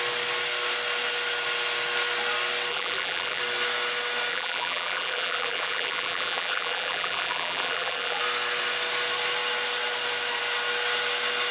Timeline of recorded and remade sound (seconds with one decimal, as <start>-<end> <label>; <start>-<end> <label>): 0.0-2.7 recorded; 2.7-3.4 remade; 3.4-4.3 recorded; 4.3-8.2 remade; 8.2-11.5 recorded